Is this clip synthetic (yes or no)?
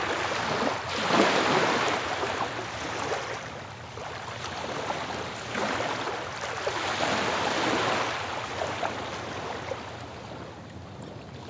no